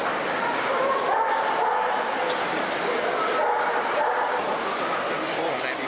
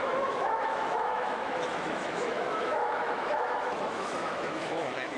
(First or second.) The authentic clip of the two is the first